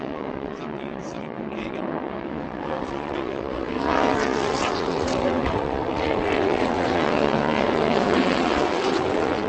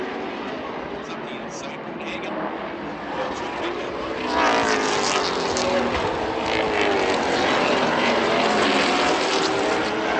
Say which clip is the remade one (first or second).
first